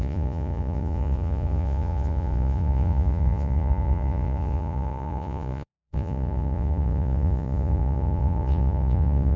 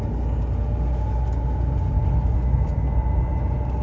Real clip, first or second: second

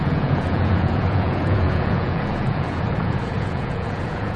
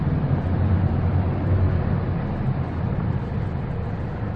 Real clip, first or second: second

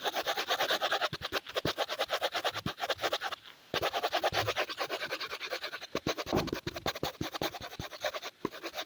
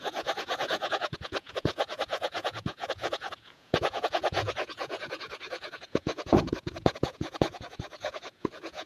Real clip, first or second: first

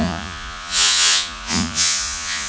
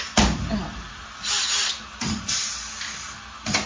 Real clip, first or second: second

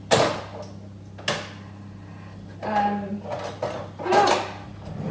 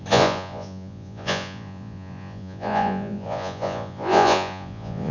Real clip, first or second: first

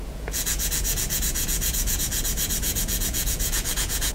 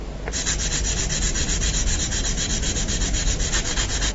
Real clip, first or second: second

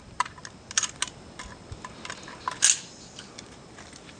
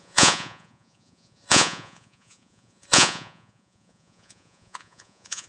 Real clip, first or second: first